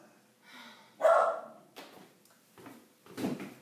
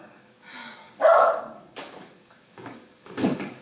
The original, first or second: first